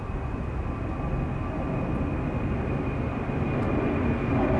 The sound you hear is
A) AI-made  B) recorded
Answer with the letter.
B